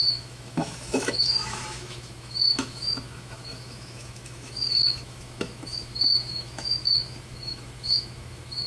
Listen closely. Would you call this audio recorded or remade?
remade